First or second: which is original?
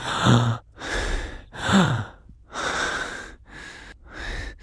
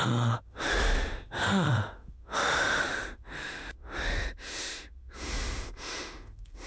first